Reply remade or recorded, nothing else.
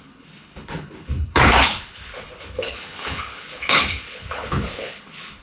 remade